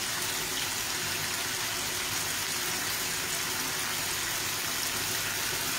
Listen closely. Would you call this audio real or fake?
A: real